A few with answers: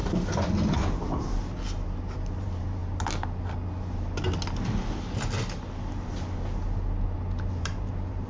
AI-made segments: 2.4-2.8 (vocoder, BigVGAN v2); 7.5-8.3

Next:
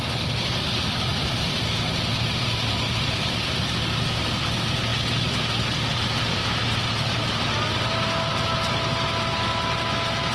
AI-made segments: 1.1-1.6 (vocoder, BigVGAN v2); 4.9-7.5